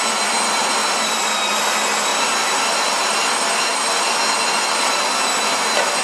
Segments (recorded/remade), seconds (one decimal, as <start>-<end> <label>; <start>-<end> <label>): 0.0-0.8 recorded; 0.8-1.6 remade; 1.6-2.1 recorded; 2.1-3.3 remade; 3.3-6.0 recorded